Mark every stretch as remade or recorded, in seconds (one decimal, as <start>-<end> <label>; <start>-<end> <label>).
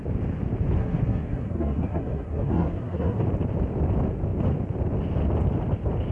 0.0-0.8 recorded; 0.8-3.2 remade; 3.2-6.1 recorded